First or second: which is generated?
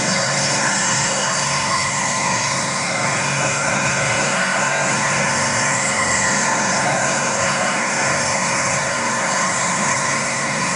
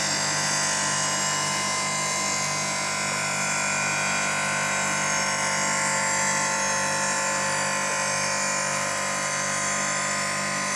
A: first